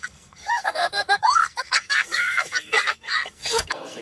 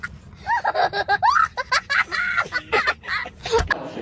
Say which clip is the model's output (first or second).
first